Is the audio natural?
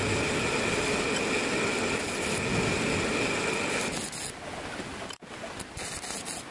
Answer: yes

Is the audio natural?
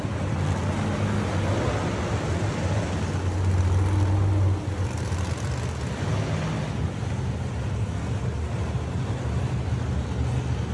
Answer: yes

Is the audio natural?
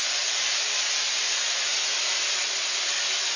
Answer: yes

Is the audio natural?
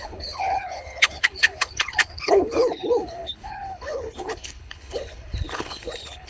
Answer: no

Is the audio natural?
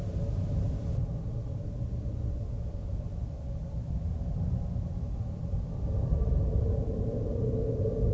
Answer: yes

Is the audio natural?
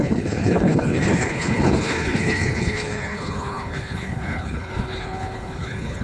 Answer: no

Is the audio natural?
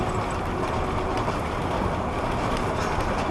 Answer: yes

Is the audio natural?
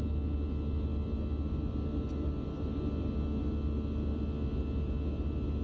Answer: yes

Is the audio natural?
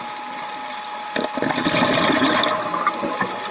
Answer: yes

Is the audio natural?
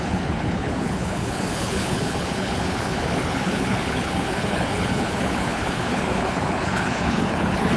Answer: no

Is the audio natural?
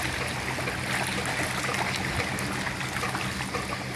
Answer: yes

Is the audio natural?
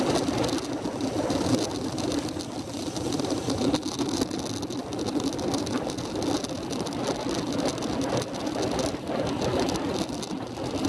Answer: yes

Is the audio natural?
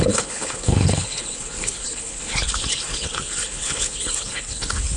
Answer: no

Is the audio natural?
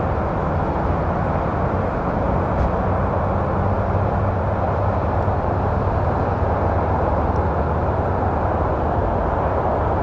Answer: yes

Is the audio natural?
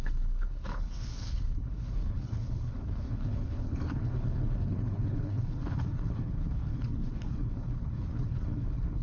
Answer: no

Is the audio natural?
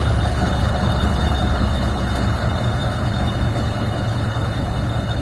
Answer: no